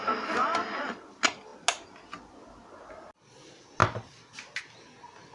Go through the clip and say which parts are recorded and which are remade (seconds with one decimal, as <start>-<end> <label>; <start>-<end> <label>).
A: 0.0-5.3 recorded